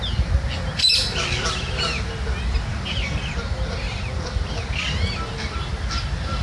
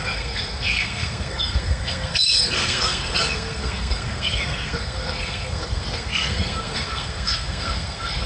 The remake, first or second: second